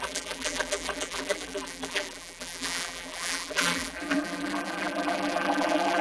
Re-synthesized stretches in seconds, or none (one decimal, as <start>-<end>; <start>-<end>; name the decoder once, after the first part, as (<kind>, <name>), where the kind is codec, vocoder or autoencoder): 0.0-6.0 (vocoder, BigVGAN v2)